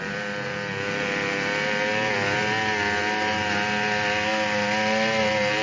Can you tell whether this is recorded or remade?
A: recorded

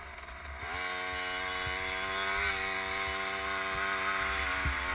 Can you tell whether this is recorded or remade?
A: recorded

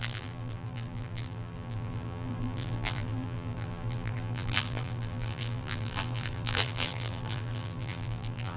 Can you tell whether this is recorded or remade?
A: remade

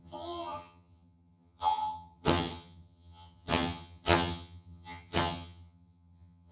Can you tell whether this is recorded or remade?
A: remade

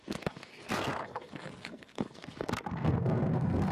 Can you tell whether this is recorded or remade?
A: remade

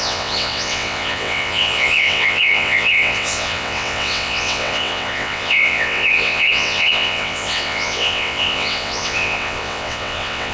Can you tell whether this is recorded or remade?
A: remade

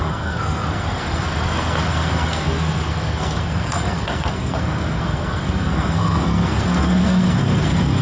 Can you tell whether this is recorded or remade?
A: remade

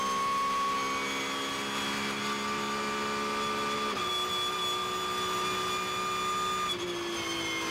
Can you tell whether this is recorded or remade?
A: recorded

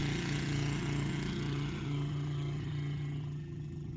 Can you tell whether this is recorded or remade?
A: remade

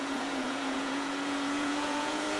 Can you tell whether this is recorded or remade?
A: remade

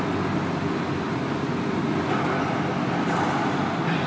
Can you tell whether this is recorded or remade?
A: recorded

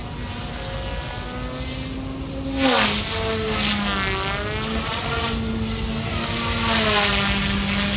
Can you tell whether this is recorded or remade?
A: recorded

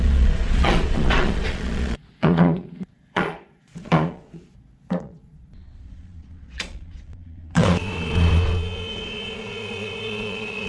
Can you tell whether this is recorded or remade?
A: remade